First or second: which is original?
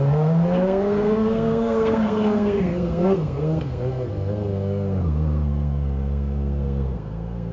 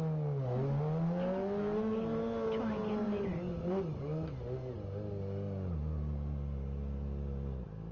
second